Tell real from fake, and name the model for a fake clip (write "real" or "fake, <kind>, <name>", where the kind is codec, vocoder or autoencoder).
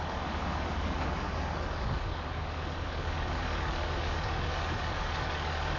fake, codec, DAC